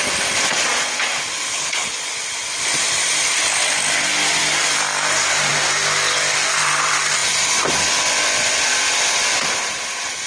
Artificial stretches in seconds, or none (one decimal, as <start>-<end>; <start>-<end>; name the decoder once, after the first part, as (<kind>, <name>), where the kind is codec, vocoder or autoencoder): 1.5-2.0 (codec, HILCodec)